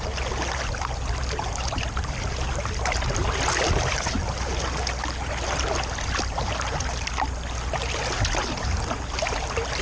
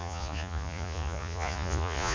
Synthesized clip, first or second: second